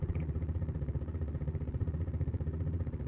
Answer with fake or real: fake